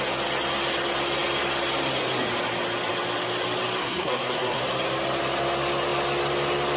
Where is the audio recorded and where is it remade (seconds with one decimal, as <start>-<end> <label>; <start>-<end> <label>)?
0.0-3.8 recorded; 3.8-4.6 remade; 4.6-6.8 recorded

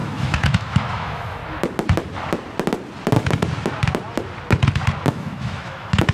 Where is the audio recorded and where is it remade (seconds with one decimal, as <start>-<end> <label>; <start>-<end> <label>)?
0.0-1.4 remade; 1.4-5.1 recorded; 5.1-6.1 remade

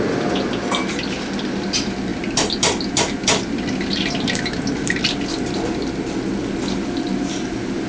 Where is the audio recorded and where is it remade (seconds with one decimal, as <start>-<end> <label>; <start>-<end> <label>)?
0.0-7.9 recorded